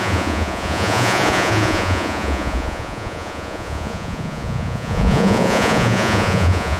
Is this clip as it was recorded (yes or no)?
no